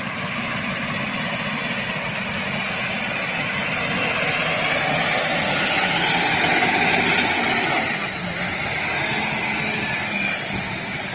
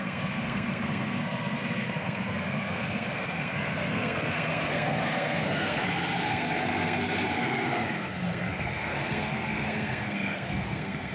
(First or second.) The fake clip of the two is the second